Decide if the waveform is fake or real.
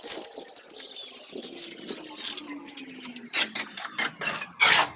real